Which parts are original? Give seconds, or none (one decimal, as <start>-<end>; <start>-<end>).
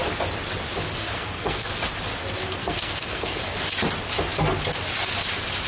0.0-1.1; 1.7-2.6; 3.4-5.7